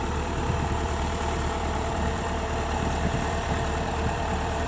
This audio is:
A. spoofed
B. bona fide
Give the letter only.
A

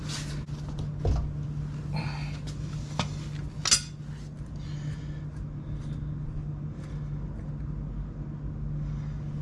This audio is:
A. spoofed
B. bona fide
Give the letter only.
B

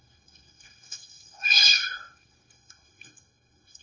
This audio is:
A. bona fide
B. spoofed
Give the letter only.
B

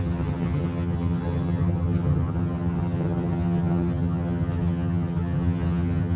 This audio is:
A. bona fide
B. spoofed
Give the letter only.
B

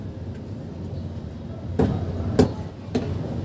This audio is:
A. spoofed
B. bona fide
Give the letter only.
B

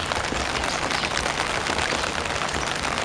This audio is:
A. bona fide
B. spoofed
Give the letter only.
A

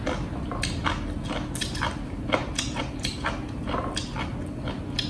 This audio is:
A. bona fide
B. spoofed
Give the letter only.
A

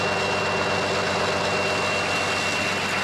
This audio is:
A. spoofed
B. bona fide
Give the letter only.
B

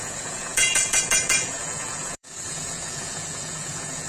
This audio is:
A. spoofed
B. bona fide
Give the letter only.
A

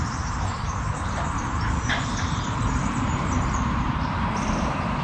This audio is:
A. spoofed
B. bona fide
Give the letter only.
A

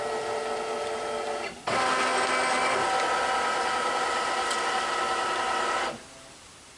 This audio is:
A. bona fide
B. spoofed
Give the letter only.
A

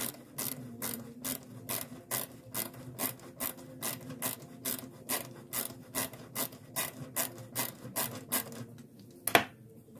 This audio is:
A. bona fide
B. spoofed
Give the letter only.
A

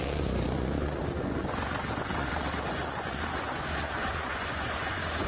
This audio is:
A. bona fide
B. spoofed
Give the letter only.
B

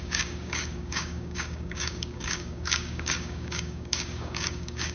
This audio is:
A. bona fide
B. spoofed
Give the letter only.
B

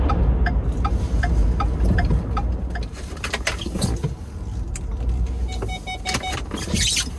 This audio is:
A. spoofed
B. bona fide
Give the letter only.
B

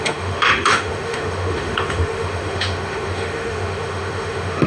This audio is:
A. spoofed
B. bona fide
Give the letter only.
A